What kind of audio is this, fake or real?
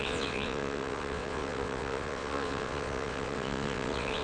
fake